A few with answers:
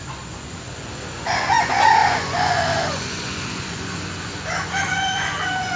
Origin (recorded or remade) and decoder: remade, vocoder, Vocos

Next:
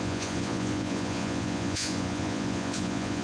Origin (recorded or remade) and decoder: remade, vocoder, Vocos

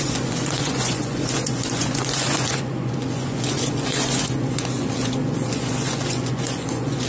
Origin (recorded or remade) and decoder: remade, vocoder, Vocos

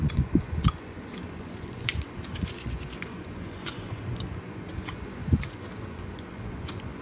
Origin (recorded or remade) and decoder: remade, vocoder, Vocos